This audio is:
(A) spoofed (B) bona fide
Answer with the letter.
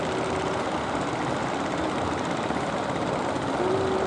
B